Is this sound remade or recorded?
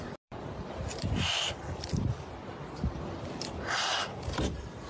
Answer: remade